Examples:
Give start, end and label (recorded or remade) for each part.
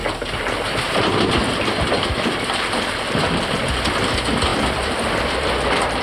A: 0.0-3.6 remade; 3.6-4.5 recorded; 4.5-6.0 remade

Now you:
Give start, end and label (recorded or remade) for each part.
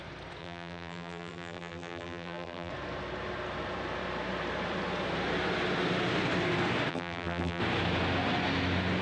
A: 0.0-0.4 recorded; 0.4-2.7 remade; 2.7-6.9 recorded; 6.9-7.6 remade; 7.6-9.0 recorded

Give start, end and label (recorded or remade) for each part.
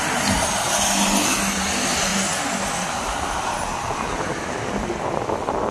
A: 0.0-5.7 recorded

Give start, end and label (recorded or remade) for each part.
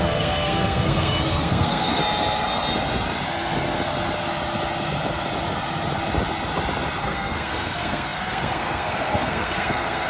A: 0.0-2.0 remade; 2.0-7.0 recorded; 7.0-10.1 remade